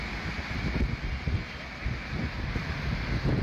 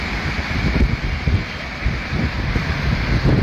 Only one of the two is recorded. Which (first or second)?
first